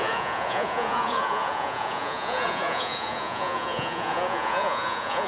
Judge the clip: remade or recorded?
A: remade